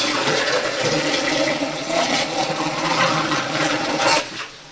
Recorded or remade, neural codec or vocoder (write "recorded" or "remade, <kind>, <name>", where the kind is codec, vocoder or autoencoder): remade, vocoder, Vocos